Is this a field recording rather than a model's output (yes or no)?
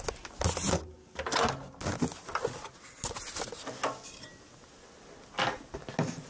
yes